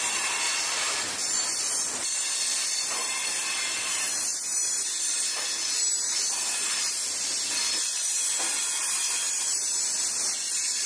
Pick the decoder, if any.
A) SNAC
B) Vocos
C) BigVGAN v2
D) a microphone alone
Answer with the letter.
D